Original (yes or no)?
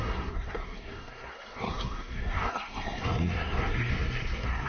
no